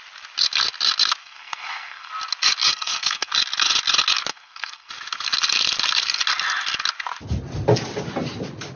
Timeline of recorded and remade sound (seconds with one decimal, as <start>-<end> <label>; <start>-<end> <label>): 0.0-1.2 recorded; 1.2-2.1 remade; 2.1-2.7 recorded; 2.7-3.3 remade; 3.3-4.3 recorded; 4.3-4.9 remade; 4.9-8.8 recorded